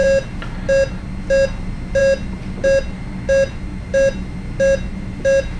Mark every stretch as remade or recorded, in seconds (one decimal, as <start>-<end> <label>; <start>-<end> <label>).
0.0-5.6 recorded